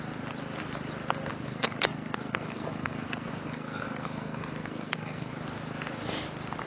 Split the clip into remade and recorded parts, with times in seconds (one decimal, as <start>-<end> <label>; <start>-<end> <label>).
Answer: 0.0-1.3 recorded; 1.3-5.3 remade; 5.3-6.7 recorded